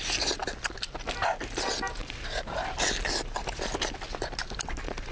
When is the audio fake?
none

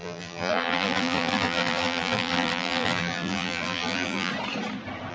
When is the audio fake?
0.0-4.3 (vocoder, BigVGAN v2)

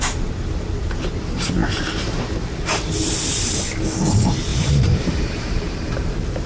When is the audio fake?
4.5-6.5 (vocoder, BigVGAN v2)